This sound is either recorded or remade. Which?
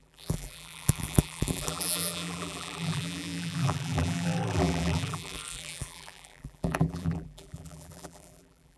remade